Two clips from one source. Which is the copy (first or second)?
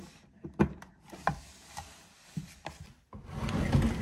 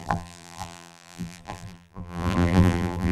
second